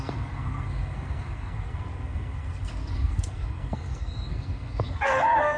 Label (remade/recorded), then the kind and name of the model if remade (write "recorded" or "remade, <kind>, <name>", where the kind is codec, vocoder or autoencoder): remade, codec, SNAC